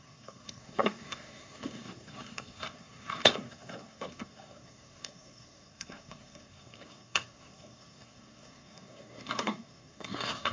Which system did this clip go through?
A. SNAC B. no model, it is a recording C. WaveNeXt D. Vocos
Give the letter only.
A